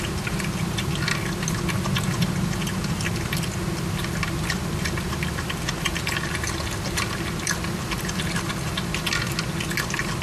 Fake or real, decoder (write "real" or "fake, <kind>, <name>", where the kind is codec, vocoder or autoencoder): real